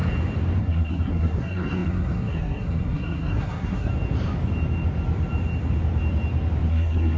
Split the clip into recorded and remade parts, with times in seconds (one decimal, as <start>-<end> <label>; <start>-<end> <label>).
0.0-0.6 recorded; 0.6-3.9 remade; 3.9-6.7 recorded; 6.7-7.2 remade